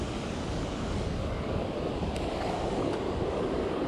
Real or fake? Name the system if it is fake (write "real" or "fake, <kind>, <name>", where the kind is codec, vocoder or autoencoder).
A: fake, codec, DAC